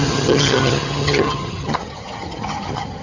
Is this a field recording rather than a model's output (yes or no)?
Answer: no